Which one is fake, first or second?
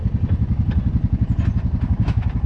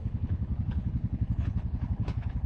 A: second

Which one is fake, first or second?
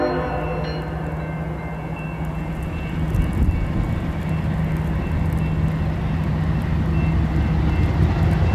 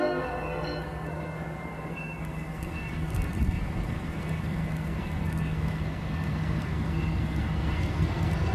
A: second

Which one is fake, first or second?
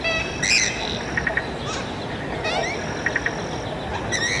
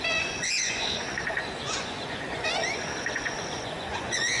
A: second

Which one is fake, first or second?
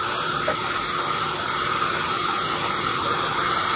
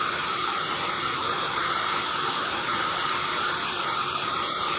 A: second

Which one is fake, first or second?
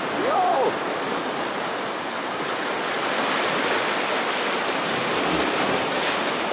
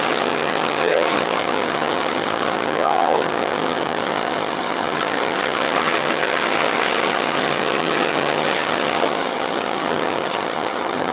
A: second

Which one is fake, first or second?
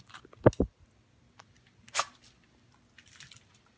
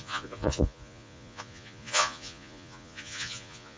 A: second